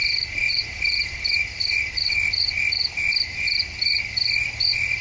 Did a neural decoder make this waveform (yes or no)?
no